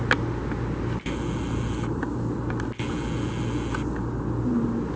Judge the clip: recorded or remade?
recorded